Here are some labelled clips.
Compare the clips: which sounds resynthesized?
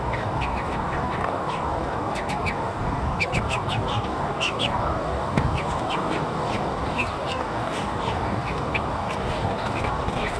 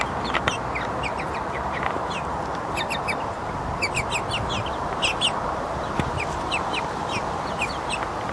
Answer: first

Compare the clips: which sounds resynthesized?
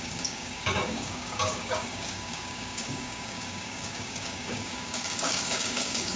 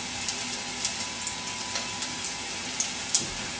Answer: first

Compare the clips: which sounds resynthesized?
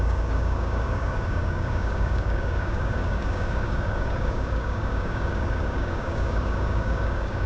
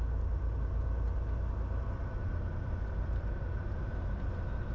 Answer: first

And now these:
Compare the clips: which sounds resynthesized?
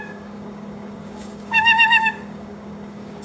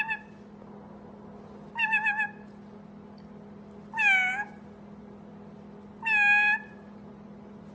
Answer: first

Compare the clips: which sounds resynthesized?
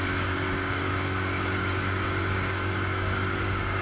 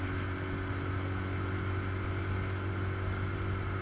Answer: first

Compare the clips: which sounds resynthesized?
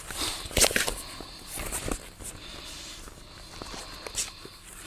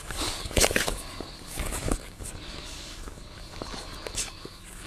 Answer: second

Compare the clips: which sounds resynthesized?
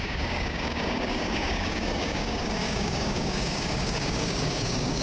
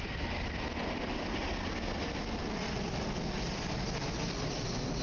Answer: first